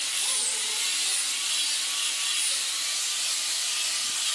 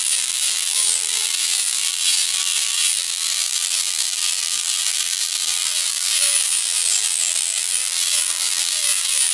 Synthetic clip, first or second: second